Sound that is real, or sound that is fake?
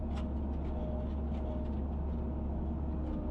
real